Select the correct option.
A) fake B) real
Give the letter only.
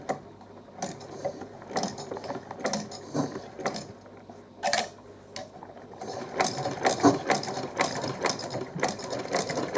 B